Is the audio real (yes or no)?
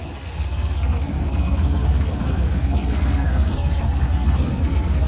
no